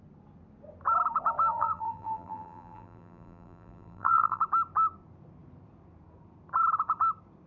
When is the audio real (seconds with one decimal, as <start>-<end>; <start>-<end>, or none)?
0.0-1.5; 4.4-7.5